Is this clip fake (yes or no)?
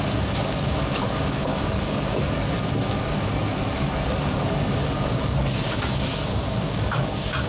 yes